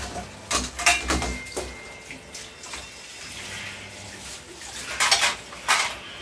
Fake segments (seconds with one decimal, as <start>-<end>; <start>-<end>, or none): none